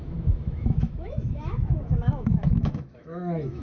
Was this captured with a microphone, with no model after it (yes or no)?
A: no